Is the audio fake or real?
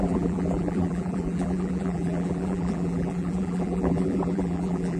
fake